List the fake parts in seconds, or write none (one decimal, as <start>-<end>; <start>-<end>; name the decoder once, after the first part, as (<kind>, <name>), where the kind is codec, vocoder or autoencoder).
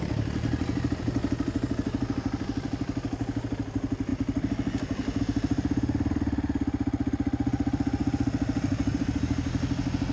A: none